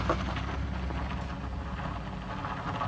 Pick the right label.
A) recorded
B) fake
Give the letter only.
A